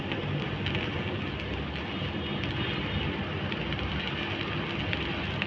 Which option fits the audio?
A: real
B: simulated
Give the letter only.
A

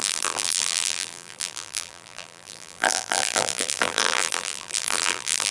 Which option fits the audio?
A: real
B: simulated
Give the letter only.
B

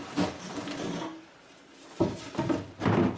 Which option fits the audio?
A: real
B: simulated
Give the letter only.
A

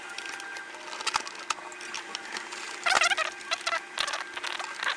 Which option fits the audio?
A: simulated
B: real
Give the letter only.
B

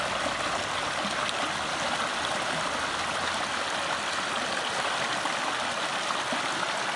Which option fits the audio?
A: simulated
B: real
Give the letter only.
B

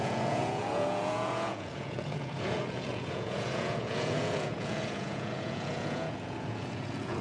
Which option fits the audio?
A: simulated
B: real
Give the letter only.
A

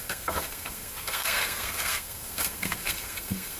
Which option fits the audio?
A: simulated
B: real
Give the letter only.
A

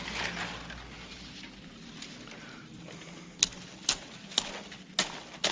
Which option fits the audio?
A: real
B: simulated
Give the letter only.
A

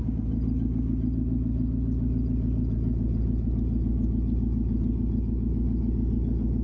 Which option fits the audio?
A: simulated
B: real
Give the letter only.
B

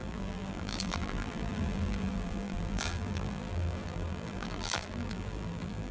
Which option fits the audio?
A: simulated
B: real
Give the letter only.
A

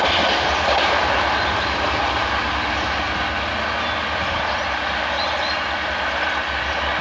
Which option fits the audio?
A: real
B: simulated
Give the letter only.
A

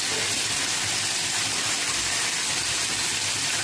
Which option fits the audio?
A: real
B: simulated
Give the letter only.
A